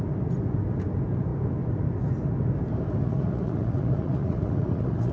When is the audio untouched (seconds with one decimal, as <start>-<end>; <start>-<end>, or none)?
0.0-3.0